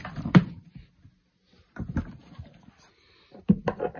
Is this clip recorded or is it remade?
recorded